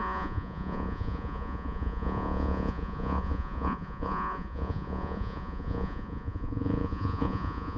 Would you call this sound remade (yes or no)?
yes